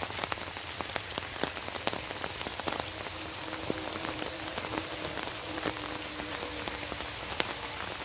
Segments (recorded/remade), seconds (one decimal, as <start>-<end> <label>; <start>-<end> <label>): 0.0-2.5 recorded; 2.5-6.8 remade; 6.8-8.0 recorded